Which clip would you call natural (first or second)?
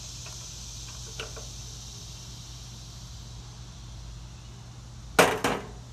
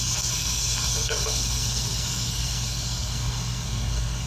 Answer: first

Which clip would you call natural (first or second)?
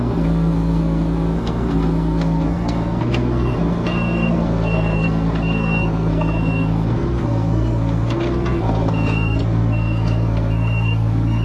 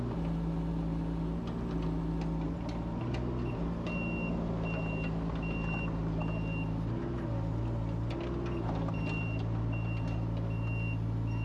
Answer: second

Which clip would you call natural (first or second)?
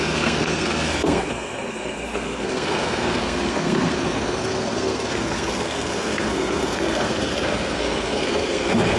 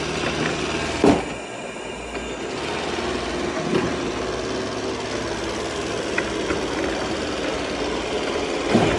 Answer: second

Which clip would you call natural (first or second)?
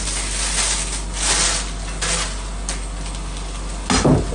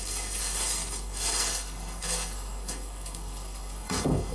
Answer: first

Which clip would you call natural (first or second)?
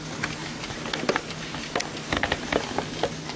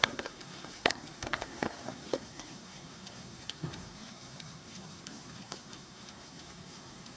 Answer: first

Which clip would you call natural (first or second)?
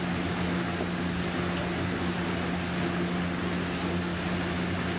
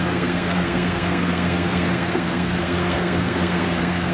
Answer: first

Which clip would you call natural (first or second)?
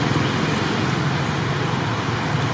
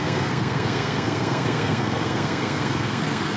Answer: first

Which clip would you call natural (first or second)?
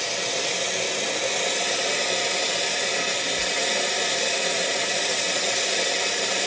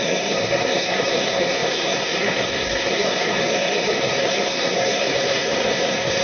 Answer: first